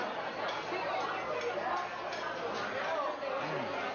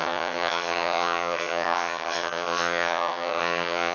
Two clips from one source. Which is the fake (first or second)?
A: second